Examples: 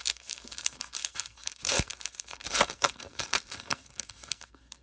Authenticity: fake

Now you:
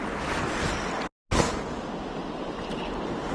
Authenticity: real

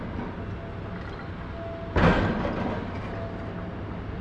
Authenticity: real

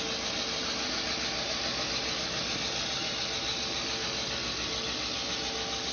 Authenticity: real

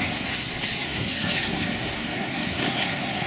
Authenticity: fake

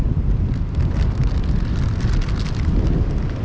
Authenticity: real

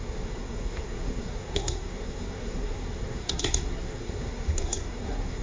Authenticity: fake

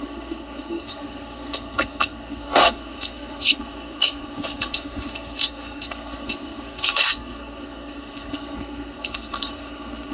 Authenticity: fake